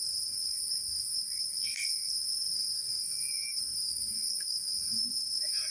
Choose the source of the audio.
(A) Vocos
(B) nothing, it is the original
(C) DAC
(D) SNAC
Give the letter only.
D